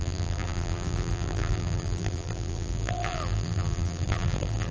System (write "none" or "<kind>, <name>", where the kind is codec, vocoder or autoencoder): vocoder, BigVGAN v2